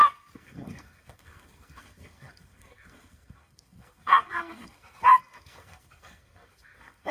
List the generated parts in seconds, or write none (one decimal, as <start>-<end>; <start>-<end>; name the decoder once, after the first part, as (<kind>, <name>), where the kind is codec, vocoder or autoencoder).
0.0-7.1 (codec, SNAC)